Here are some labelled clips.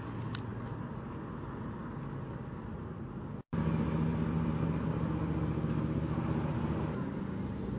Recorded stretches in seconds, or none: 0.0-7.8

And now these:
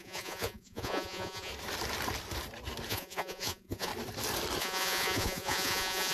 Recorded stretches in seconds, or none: 1.5-2.9; 3.9-4.6

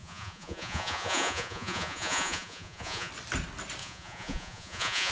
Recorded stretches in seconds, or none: 3.1-3.8

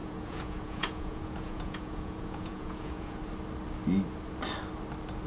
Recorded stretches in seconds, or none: 3.2-5.3

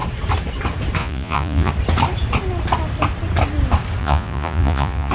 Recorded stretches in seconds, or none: 0.0-1.0; 1.7-4.0